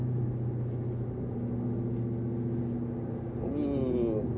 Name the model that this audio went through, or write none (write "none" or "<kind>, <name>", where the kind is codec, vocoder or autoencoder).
none